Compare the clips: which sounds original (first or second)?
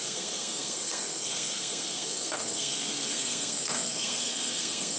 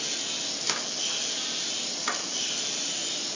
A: second